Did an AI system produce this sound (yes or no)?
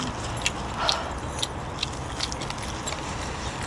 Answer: no